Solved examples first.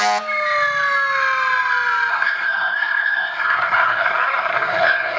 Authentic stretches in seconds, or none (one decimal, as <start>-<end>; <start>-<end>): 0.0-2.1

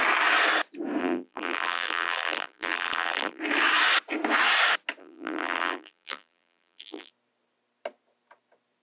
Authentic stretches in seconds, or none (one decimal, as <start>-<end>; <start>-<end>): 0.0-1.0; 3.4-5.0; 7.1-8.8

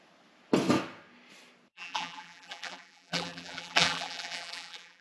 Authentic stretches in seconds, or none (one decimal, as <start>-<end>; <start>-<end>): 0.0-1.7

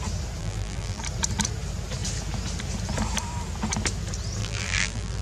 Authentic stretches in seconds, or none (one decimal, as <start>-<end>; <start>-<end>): 0.0-0.4; 1.0-4.4

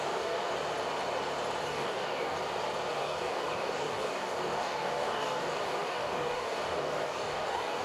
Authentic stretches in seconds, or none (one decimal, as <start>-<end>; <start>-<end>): 0.5-1.6; 2.4-2.9

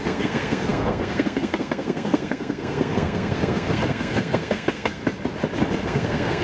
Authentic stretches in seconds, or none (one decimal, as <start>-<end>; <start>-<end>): 5.0-5.8

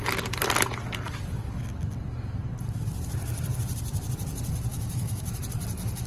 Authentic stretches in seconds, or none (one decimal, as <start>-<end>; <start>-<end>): 0.0-4.7; 5.4-6.1